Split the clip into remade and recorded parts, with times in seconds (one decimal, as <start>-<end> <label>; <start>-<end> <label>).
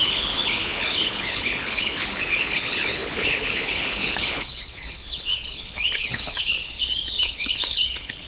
0.0-8.3 remade